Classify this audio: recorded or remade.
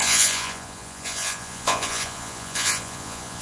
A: remade